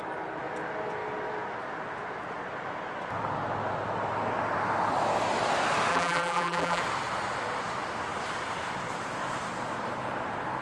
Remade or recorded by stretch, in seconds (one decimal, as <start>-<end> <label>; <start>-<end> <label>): 0.0-5.9 recorded; 5.9-6.8 remade; 6.8-10.6 recorded

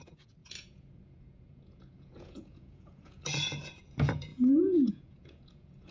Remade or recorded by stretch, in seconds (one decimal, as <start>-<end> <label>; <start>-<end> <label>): 0.0-5.9 remade

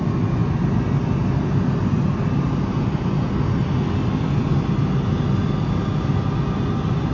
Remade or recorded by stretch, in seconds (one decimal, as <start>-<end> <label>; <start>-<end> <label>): 0.0-7.1 recorded

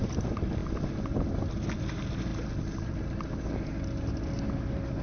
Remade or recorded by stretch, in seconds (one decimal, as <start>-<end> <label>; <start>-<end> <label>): 0.0-5.0 recorded

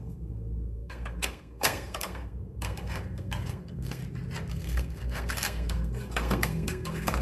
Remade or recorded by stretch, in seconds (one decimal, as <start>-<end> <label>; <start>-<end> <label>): 0.0-4.0 remade; 4.0-4.5 recorded; 4.5-7.2 remade